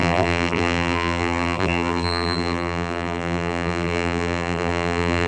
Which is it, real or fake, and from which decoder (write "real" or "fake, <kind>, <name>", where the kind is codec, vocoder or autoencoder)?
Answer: fake, vocoder, BigVGAN v2